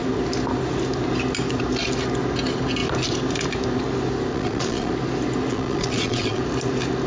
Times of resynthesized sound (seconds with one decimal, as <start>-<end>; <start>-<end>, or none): 4.3-4.9; 5.5-6.4